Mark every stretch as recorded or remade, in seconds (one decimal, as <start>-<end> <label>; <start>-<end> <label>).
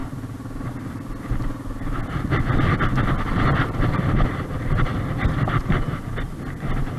0.0-7.0 recorded